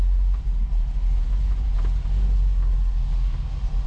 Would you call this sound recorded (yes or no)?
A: yes